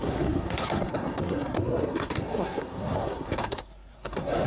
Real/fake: fake